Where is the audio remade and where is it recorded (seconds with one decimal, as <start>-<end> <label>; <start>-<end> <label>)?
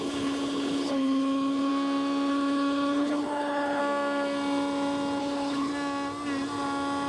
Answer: 0.0-1.7 remade; 1.7-2.3 recorded; 2.3-3.8 remade; 3.8-5.2 recorded; 5.2-5.7 remade; 5.7-7.1 recorded